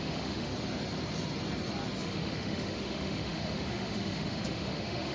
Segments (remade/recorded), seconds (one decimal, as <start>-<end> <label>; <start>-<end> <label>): 0.0-0.5 remade; 0.5-2.0 recorded; 2.0-5.1 remade